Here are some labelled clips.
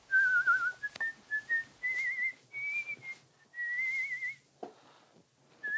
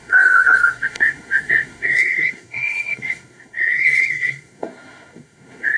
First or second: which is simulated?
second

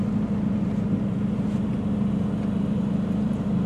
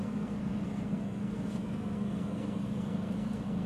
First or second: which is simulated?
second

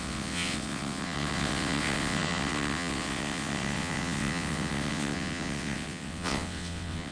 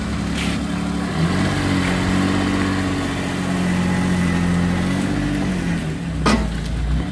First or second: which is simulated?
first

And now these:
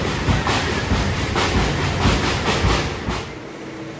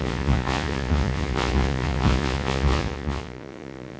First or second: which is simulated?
second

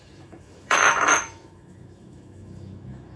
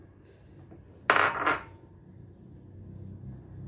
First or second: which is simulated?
first